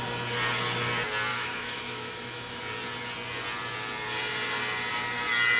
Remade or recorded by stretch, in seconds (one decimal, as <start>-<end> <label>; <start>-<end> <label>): 0.0-1.3 recorded; 1.3-2.6 remade; 2.6-5.6 recorded